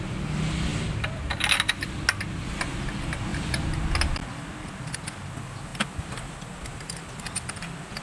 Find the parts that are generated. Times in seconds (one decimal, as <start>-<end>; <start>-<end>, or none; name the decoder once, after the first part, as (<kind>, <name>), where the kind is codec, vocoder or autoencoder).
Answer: none